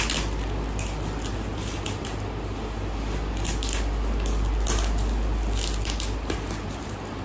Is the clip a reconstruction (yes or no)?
no